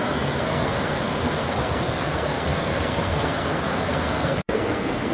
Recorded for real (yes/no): no